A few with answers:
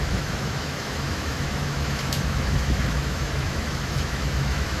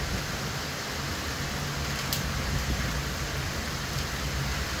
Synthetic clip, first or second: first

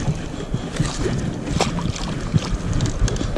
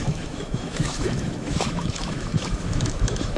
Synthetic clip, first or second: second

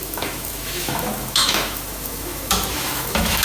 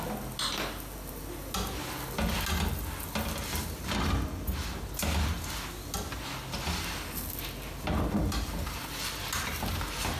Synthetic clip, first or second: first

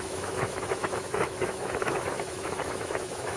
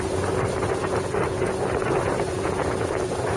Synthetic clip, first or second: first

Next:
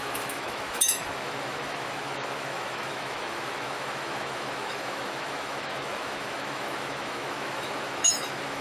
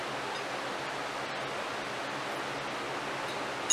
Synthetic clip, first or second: first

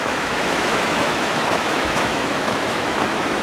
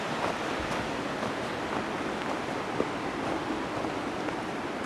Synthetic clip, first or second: first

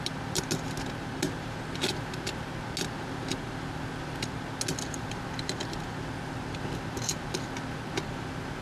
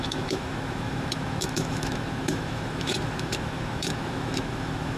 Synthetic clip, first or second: second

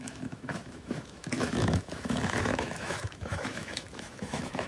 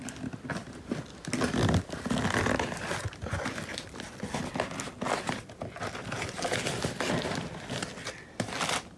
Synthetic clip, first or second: first